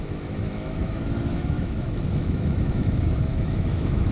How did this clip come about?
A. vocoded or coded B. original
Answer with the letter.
A